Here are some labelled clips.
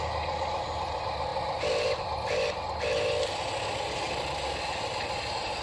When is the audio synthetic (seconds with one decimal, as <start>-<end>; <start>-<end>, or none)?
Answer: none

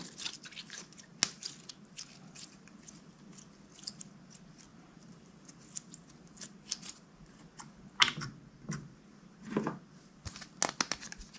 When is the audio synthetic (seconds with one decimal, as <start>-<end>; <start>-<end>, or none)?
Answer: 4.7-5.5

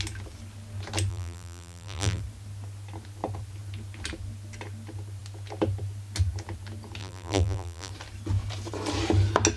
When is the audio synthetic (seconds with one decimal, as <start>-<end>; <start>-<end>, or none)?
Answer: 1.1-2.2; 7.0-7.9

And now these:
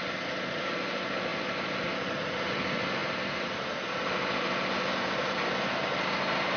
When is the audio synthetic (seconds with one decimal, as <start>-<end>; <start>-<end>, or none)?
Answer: 3.0-3.7

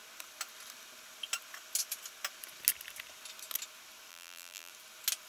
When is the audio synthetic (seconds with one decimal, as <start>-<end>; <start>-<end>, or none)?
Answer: 4.1-4.7

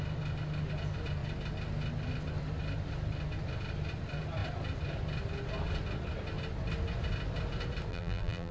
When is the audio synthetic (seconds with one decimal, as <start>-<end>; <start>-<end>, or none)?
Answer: 7.9-8.5